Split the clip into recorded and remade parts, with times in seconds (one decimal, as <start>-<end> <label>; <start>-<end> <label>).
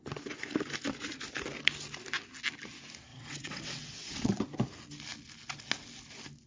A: 0.0-3.1 recorded; 3.1-4.4 remade; 4.4-6.5 recorded